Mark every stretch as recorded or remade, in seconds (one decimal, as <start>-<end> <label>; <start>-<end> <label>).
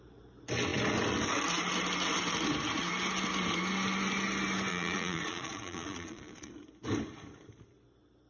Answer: 0.0-4.7 recorded; 4.7-6.5 remade; 6.5-8.3 recorded